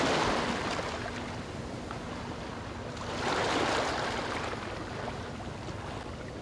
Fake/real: real